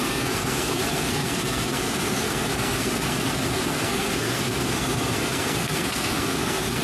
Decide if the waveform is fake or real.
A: fake